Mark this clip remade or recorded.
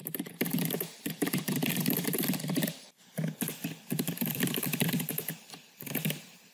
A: recorded